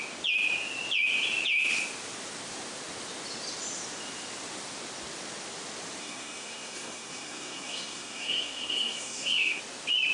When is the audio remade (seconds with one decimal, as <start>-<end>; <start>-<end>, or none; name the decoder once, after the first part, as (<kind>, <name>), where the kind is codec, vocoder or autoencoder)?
6.0-9.6 (codec, SNAC)